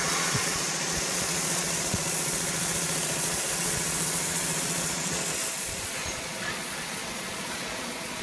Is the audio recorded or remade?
remade